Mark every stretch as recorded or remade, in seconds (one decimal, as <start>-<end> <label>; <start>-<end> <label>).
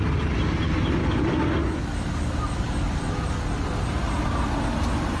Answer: 0.0-1.0 recorded; 1.0-1.6 remade; 1.6-5.2 recorded